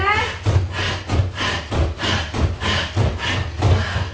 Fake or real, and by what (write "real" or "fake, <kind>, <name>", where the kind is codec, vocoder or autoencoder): real